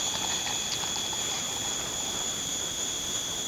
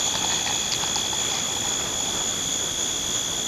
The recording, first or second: second